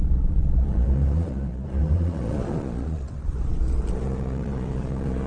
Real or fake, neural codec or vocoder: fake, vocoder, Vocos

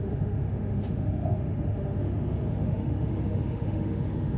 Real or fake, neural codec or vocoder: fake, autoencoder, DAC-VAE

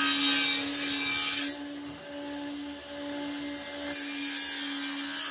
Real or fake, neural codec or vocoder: real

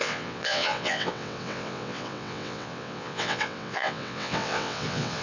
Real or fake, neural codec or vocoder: fake, vocoder, WaveNeXt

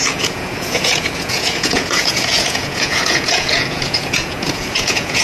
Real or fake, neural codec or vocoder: fake, vocoder, Vocos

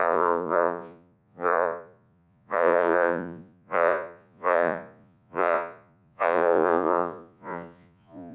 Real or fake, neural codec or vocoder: fake, vocoder, Vocos